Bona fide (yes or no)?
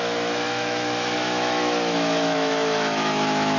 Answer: no